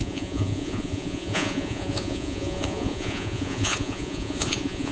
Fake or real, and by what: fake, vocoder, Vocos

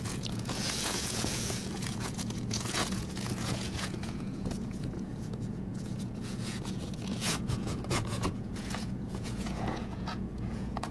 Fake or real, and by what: fake, vocoder, Vocos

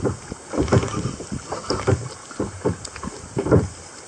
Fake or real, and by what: real